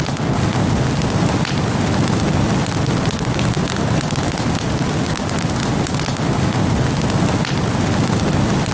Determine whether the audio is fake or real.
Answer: real